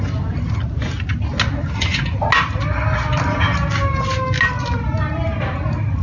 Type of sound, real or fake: real